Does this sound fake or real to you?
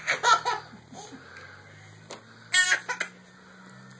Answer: real